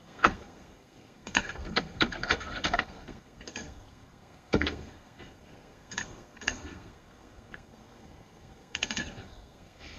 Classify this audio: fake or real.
fake